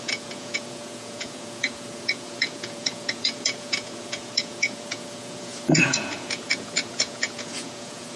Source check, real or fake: fake